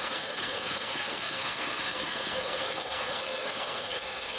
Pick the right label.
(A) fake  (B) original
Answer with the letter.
A